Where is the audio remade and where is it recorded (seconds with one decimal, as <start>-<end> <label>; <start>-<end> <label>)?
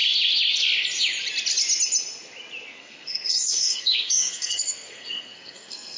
0.0-2.8 recorded; 2.8-6.0 remade